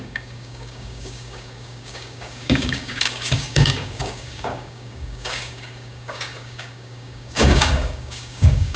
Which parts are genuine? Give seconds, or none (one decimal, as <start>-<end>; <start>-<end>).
none